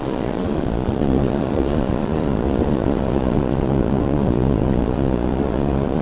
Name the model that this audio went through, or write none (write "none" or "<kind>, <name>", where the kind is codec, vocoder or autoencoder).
vocoder, Vocos